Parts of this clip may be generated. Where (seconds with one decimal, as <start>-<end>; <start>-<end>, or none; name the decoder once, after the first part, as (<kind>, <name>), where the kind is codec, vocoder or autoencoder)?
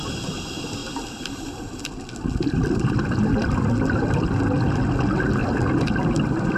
5.4-5.9 (vocoder, BigVGAN v2)